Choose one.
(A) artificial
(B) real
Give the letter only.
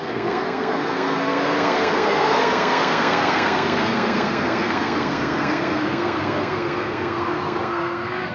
A